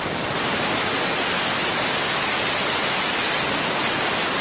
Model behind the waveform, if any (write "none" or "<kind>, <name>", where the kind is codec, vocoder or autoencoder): none